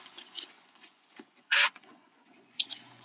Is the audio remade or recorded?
remade